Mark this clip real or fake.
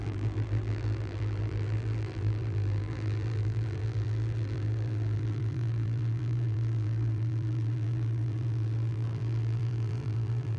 fake